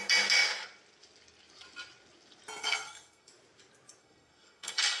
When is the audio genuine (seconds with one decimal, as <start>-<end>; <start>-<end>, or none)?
0.0-2.6; 3.3-4.0